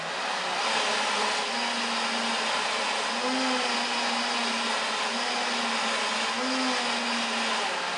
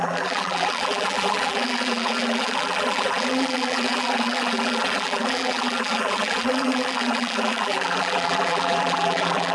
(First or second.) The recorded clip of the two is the first